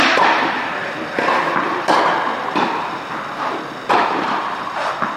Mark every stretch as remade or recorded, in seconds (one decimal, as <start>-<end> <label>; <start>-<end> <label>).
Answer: 0.0-0.8 remade; 0.8-3.9 recorded; 3.9-5.2 remade